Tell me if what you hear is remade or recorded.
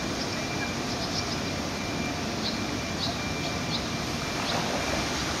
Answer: recorded